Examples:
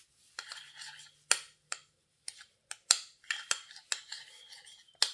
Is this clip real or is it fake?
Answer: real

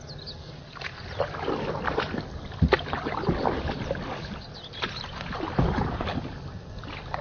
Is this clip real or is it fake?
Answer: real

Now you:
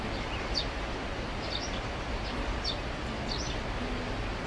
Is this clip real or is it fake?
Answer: real